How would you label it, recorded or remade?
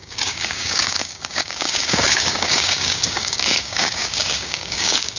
remade